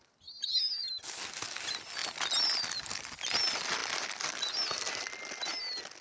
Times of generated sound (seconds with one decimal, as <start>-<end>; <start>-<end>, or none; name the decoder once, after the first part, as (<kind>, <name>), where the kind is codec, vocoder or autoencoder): none